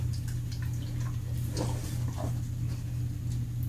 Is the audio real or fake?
real